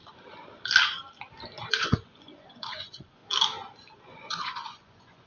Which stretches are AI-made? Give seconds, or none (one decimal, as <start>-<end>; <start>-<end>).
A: 1.7-3.2; 4.0-5.3